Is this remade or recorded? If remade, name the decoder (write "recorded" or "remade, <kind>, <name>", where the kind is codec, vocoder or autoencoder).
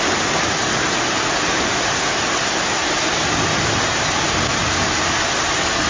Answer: recorded